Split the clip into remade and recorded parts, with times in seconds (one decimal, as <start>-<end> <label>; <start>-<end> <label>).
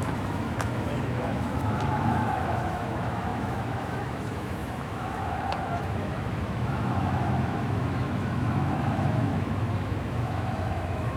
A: 0.0-11.2 remade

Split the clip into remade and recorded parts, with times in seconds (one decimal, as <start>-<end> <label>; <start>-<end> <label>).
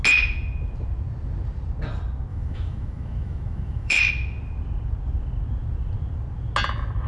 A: 0.0-2.3 recorded; 2.3-4.1 remade; 4.1-7.1 recorded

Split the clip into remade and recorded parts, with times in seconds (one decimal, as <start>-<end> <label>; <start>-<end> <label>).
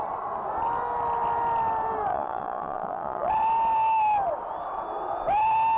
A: 0.0-2.1 recorded; 2.1-3.3 remade; 3.3-5.8 recorded